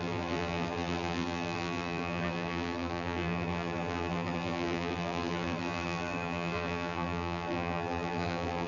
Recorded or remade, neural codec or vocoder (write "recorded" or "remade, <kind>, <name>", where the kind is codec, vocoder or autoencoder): remade, vocoder, BigVGAN v2